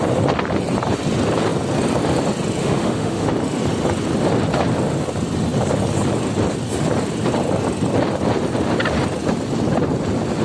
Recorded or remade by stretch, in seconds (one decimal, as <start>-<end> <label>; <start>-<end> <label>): 0.0-2.6 recorded; 2.6-3.3 remade; 3.3-10.4 recorded